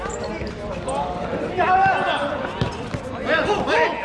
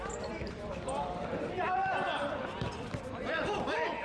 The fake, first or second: second